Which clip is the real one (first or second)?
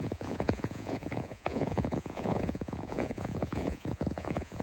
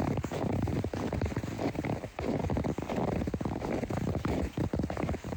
second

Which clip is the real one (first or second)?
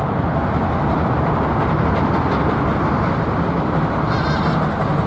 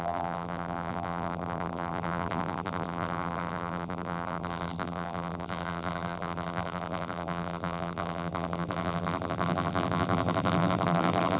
first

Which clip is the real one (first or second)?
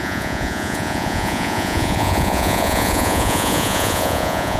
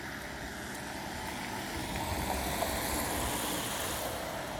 second